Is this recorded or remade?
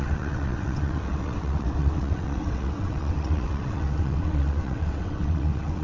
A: remade